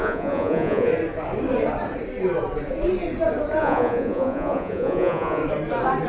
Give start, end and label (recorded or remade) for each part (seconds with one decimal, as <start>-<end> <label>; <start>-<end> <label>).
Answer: 0.0-0.9 remade; 0.9-3.6 recorded; 3.6-5.4 remade; 5.4-6.1 recorded